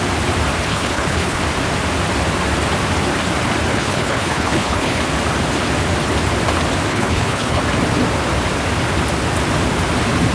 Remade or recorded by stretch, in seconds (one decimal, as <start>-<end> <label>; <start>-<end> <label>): 0.0-0.7 recorded; 0.7-1.4 remade; 1.4-3.7 recorded; 3.7-5.0 remade; 5.0-6.9 recorded; 6.9-7.6 remade; 7.6-10.3 recorded